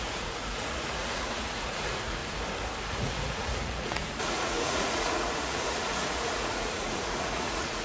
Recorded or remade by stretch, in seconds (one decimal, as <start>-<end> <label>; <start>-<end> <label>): 0.0-2.2 remade; 2.2-2.9 recorded; 2.9-7.8 remade